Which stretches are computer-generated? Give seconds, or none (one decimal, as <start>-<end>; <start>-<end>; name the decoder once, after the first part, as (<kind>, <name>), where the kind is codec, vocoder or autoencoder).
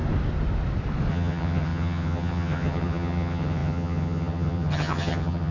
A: 1.1-5.5 (vocoder, HiFi-GAN)